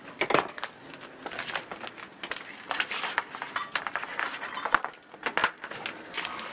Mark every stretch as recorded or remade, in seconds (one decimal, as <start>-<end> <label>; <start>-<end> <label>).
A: 0.0-6.5 recorded